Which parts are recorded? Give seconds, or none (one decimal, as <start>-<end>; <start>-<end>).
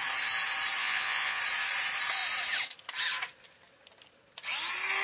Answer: 0.0-0.8; 1.4-5.0